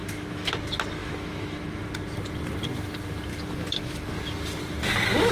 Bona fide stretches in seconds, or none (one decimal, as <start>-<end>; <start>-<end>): 0.5-1.0; 1.9-3.3; 4.1-5.3